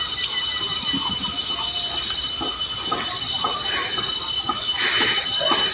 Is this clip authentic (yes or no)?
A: yes